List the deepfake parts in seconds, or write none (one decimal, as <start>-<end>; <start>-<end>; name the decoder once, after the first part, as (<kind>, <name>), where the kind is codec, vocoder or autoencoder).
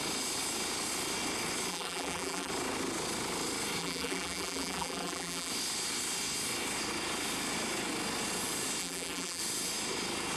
1.7-2.5 (vocoder, BigVGAN v2); 3.8-5.5; 8.8-9.4